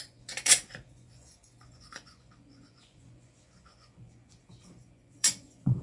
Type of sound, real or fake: fake